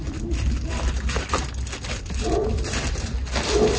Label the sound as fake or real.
real